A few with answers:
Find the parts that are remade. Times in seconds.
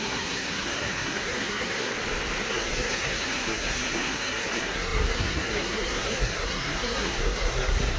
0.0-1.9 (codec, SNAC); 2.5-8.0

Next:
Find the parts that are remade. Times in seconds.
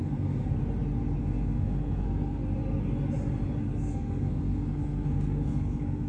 0.0-0.6 (codec, SNAC); 1.2-2.4; 3.6-6.1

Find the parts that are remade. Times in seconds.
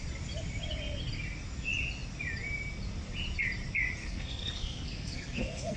4.0-5.8 (codec, SNAC)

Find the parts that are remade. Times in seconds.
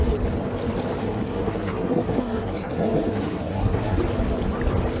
1.0-4.0 (codec, SNAC)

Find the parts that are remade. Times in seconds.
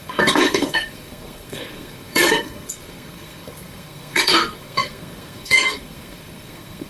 0.0-6.9 (codec, SNAC)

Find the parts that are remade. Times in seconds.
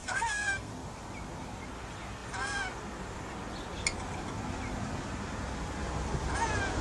0.0-0.7 (codec, SNAC)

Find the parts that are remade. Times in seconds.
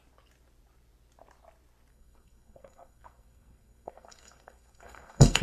1.9-5.4 (codec, SNAC)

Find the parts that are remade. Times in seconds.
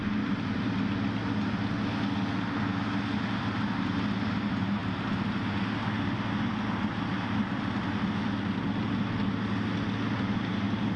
none